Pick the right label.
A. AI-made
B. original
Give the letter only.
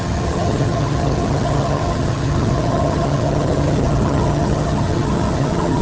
A